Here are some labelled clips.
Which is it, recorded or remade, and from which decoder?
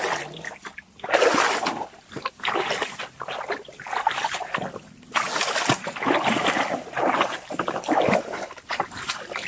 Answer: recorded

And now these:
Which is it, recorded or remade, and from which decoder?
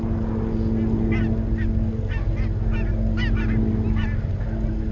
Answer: recorded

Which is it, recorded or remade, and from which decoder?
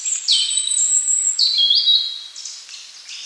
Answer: recorded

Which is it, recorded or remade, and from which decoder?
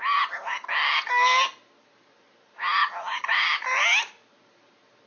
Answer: recorded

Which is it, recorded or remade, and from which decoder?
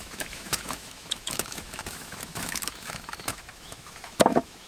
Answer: remade, autoencoder, DAC-VAE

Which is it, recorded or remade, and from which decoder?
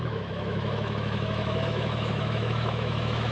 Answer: remade, autoencoder, DAC-VAE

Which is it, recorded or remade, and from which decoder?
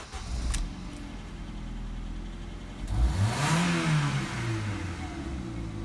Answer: recorded